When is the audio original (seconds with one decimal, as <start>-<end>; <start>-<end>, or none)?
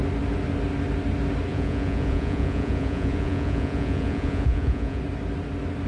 0.0-1.5; 5.0-5.9